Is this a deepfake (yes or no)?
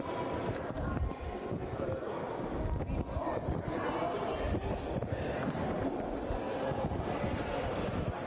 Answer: no